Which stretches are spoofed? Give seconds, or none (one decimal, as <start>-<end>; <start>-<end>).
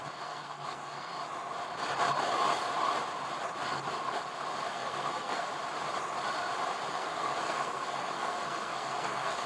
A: 0.0-1.1; 4.7-5.5; 6.9-9.5